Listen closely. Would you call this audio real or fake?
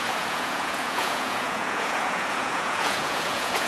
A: fake